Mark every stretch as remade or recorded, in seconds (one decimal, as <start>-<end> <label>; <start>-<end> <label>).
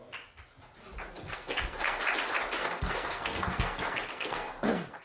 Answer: 0.0-1.2 recorded; 1.2-2.0 remade; 2.0-2.6 recorded; 2.6-5.0 remade